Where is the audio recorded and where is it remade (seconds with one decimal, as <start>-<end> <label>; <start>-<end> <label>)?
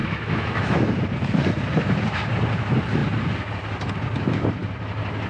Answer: 0.0-0.8 remade; 0.8-5.3 recorded